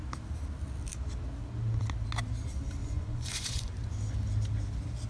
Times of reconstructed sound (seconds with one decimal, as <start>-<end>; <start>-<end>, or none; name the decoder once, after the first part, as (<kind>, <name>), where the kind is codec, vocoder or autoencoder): 2.8-3.7 (vocoder, Vocos)